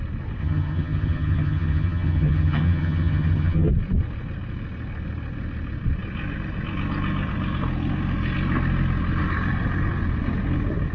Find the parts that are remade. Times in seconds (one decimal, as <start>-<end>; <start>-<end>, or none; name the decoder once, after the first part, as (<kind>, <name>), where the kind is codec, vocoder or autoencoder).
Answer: 0.4-3.7 (vocoder, HiFi-GAN)